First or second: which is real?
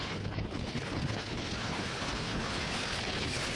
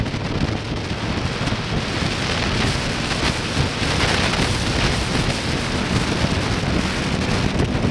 second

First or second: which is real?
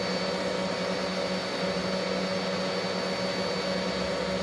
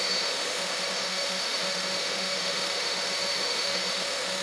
first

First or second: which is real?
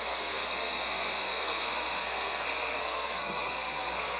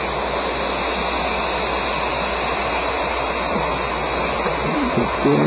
second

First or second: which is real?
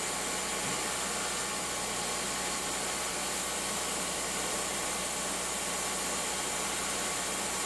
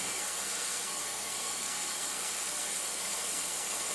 first